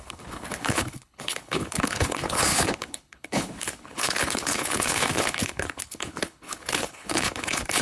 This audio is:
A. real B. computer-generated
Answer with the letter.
B